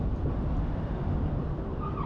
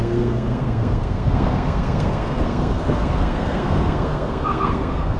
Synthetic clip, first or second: second